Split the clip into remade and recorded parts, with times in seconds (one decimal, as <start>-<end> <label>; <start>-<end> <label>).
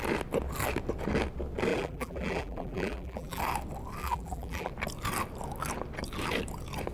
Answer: 0.0-1.7 recorded; 1.7-3.4 remade; 3.4-4.0 recorded; 4.0-4.7 remade; 4.7-6.9 recorded